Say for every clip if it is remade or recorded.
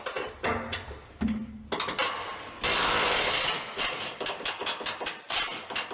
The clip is recorded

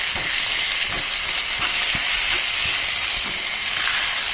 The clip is recorded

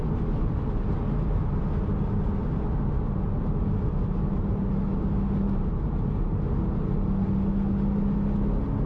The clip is recorded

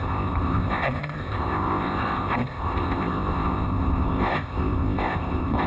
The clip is remade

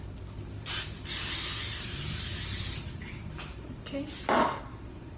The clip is recorded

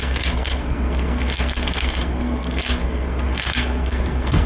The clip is remade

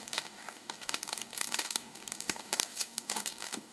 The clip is remade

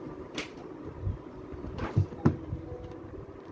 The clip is recorded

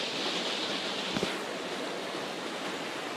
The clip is recorded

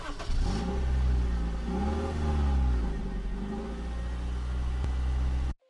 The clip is recorded